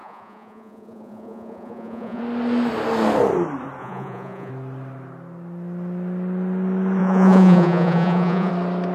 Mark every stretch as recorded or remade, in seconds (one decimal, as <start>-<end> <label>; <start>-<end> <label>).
0.0-2.2 remade; 2.2-3.8 recorded; 3.8-4.5 remade; 4.5-7.0 recorded; 7.0-8.5 remade; 8.5-8.9 recorded